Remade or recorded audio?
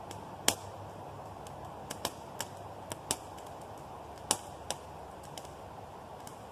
recorded